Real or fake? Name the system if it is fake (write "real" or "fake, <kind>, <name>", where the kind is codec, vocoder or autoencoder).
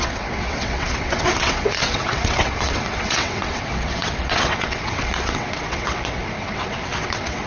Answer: fake, vocoder, WaveNeXt